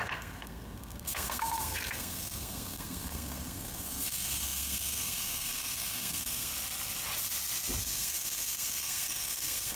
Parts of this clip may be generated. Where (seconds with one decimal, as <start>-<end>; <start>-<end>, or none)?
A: 0.0-6.5; 7.8-9.8